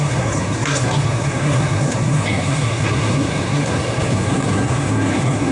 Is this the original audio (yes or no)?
no